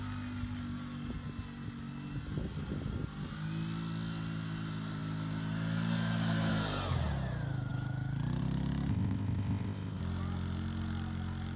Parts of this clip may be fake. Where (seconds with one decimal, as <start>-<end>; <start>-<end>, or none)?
8.9-10.0